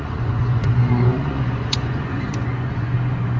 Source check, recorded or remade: remade